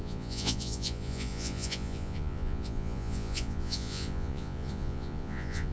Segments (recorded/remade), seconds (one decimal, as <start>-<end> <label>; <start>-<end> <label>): 0.0-5.7 remade